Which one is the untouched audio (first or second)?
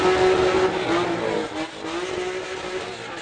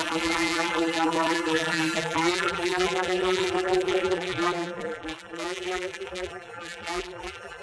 first